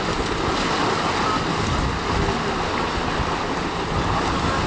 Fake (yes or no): no